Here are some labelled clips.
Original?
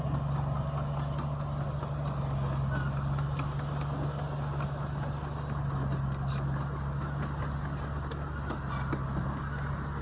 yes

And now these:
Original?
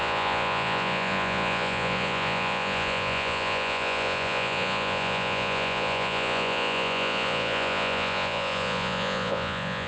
no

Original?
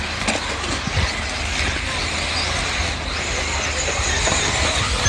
yes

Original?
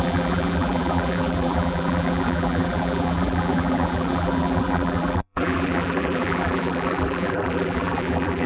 no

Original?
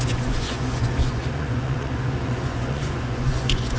no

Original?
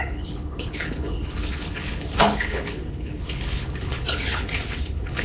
no